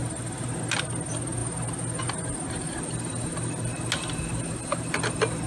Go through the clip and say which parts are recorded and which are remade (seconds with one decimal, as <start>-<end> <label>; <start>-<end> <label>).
0.0-0.6 remade; 0.6-5.5 recorded